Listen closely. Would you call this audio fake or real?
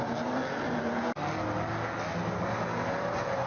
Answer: real